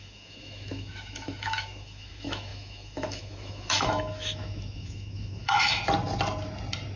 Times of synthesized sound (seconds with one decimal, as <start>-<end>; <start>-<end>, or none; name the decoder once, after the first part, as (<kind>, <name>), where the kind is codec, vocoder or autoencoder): 0.0-5.8 (autoencoder, DAC-VAE)